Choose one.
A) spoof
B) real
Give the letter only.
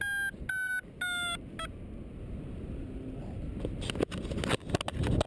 B